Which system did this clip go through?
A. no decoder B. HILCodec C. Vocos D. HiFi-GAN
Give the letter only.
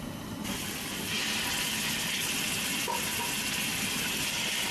A